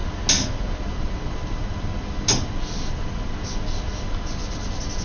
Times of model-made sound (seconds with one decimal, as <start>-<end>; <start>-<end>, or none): none